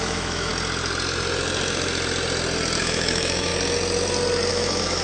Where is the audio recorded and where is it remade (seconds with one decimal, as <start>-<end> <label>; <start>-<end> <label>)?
0.0-0.5 remade; 0.5-2.8 recorded; 2.8-3.5 remade; 3.5-4.5 recorded; 4.5-5.0 remade